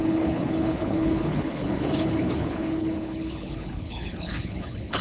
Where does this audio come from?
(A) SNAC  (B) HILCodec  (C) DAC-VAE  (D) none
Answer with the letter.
B